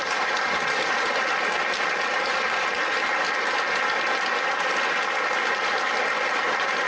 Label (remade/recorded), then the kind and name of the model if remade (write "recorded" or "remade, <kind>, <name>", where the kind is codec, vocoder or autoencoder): recorded